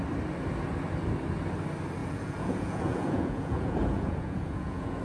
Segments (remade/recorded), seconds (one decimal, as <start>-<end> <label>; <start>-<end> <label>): 0.0-2.0 recorded; 2.0-5.0 remade